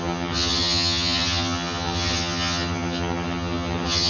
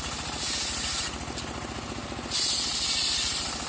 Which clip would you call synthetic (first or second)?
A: first